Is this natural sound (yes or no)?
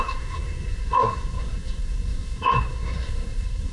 no